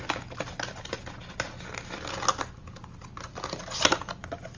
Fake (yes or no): no